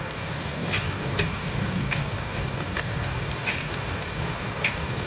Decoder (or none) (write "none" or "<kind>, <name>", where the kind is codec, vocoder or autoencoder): codec, DAC